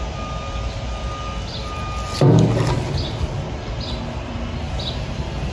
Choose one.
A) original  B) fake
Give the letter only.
A